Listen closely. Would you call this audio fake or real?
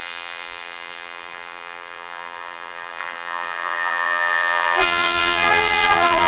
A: fake